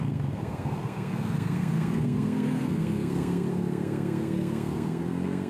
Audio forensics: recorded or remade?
remade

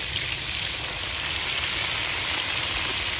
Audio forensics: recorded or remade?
recorded